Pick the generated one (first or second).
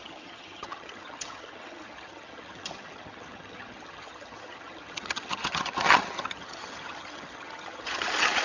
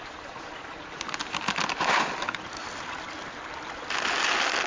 first